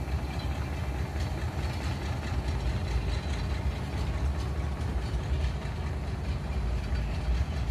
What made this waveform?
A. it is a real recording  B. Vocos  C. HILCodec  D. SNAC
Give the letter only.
A